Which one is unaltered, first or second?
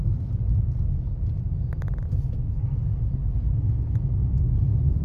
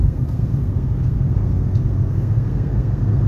first